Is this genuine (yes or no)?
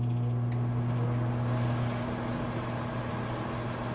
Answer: yes